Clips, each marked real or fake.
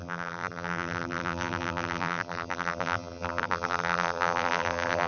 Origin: fake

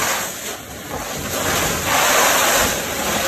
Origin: real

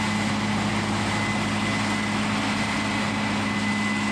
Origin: real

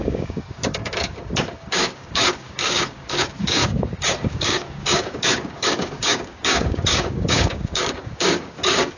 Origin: fake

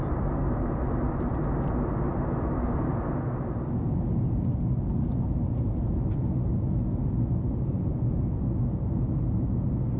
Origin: real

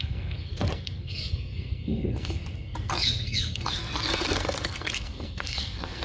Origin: fake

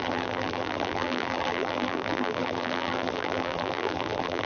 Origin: fake